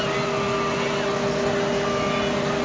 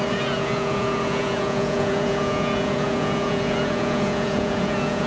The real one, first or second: first